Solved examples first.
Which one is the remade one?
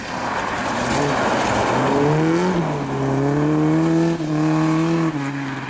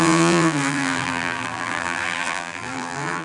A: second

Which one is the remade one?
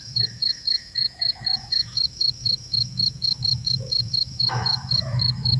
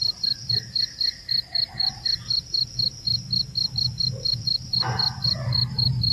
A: first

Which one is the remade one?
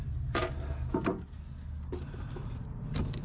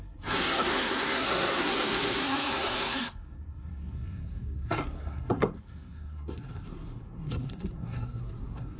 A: second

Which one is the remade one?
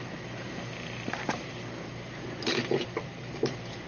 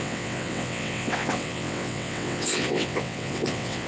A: second